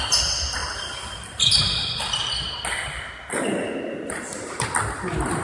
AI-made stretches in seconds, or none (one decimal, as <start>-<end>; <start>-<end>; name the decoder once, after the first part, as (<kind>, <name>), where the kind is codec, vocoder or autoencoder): none

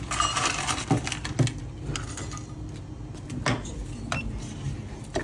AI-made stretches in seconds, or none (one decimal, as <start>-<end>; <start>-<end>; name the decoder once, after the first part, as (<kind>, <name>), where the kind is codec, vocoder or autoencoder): none

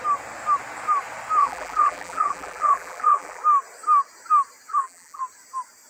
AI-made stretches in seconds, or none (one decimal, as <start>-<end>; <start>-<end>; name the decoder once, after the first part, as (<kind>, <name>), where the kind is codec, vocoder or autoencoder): 1.4-3.4 (vocoder, BigVGAN v2); 4.7-5.2